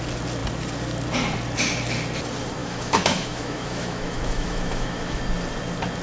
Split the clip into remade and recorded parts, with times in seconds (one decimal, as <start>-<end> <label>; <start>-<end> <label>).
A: 0.0-2.6 recorded; 2.6-5.2 remade; 5.2-6.0 recorded